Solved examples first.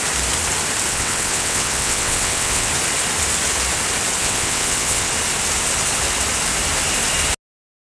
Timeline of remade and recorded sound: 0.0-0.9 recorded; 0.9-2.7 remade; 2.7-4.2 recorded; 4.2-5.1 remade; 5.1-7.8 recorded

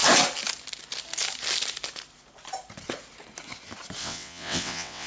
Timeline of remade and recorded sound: 0.0-4.0 recorded; 4.0-5.1 remade

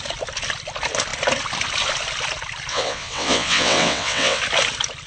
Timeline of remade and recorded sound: 0.0-2.7 recorded; 2.7-4.4 remade; 4.4-5.1 recorded

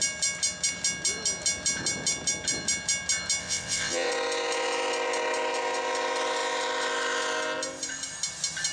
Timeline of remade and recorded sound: 0.0-3.4 recorded; 3.4-4.1 remade; 4.1-8.7 recorded

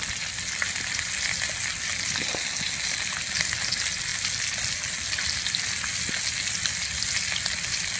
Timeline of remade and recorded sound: 0.0-8.0 recorded

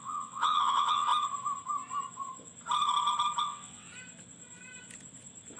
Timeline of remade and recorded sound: 0.0-1.1 remade; 1.1-3.4 recorded; 3.4-3.9 remade; 3.9-5.6 recorded

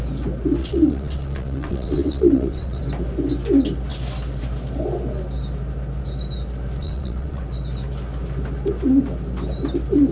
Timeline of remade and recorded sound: 0.0-0.6 recorded; 0.6-2.8 remade; 2.8-6.8 recorded; 6.8-7.4 remade; 7.4-10.1 recorded

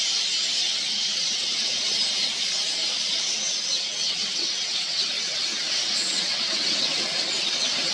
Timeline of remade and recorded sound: 0.0-0.6 recorded; 0.6-1.9 remade; 1.9-3.5 recorded; 3.5-7.9 remade